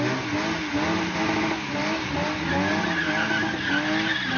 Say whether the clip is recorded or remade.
recorded